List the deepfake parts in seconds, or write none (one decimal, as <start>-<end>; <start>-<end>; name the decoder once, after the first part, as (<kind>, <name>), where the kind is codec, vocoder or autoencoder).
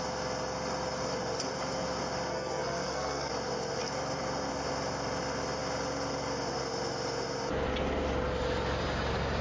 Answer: 2.3-3.3 (codec, SNAC)